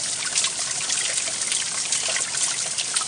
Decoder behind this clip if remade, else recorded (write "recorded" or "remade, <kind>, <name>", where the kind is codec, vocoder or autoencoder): recorded